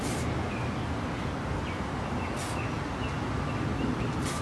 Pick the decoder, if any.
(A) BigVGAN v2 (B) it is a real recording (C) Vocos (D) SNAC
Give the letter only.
B